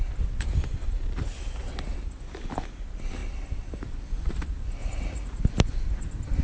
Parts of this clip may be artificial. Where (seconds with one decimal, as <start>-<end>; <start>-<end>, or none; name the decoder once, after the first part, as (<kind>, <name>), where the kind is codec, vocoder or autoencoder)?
4.8-5.4 (vocoder, Vocos)

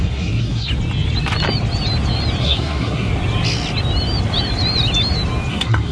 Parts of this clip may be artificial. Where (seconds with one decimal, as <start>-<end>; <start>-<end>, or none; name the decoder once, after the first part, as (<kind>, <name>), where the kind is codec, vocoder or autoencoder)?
0.0-0.7 (codec, SNAC); 2.4-3.1; 5.5-5.9

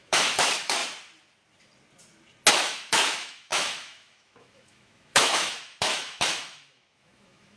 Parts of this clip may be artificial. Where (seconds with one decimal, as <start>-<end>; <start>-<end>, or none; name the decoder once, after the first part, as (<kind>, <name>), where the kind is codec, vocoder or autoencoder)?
0.0-0.8 (autoencoder, DAC-VAE); 2.5-7.6

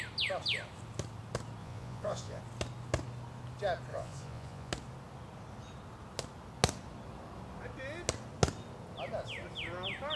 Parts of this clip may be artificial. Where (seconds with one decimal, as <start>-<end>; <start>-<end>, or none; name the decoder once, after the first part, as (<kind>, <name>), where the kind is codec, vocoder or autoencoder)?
1.6-2.4 (vocoder, Vocos); 3.9-4.7

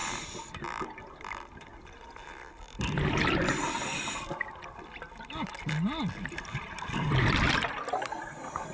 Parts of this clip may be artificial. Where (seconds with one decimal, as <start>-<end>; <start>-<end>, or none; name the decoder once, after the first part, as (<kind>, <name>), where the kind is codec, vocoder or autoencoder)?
0.8-8.7 (vocoder, BigVGAN v2)

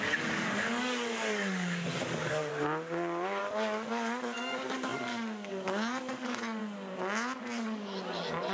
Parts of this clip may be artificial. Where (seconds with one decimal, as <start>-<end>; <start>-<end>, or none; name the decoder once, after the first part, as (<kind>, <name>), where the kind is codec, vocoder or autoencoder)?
0.0-2.5 (codec, DAC); 3.4-6.6; 7.4-8.5